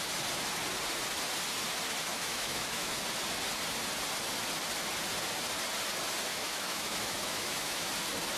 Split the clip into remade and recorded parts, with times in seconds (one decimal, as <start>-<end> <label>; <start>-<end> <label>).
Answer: 0.0-2.1 recorded; 2.1-2.9 remade; 2.9-6.3 recorded; 6.3-7.9 remade; 7.9-8.4 recorded